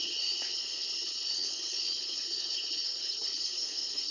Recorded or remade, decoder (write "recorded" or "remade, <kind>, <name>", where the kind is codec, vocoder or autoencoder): remade, codec, HILCodec